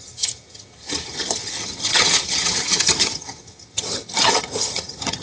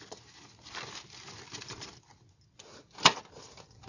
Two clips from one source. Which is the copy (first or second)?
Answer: first